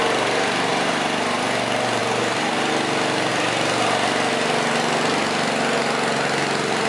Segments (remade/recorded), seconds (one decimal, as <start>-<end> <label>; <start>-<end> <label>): 0.0-0.7 recorded; 0.7-1.4 remade; 1.4-2.0 recorded; 2.0-2.7 remade; 2.7-6.9 recorded